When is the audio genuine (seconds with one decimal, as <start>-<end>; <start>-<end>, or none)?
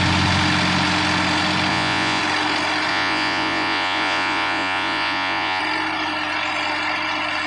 0.0-1.7; 2.2-2.9; 5.6-7.5